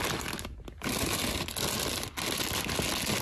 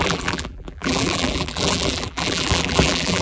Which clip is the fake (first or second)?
second